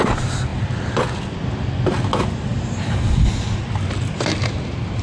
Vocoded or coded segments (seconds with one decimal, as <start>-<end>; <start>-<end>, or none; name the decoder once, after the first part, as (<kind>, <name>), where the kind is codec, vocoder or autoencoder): none